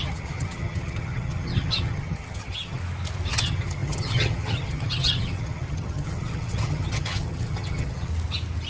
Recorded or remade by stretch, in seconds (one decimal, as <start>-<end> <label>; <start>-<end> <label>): 0.0-2.8 remade; 2.8-3.3 recorded; 3.3-8.1 remade; 8.1-8.7 recorded